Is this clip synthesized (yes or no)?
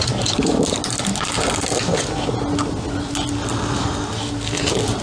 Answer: no